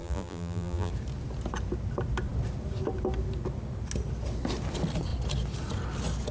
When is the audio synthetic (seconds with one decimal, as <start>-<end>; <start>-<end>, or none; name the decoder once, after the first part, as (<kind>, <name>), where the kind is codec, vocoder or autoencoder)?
0.0-0.9 (vocoder, BigVGAN v2)